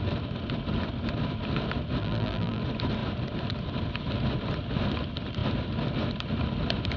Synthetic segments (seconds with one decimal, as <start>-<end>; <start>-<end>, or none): 2.0-2.6